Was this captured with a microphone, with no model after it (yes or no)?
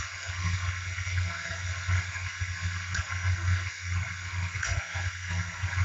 no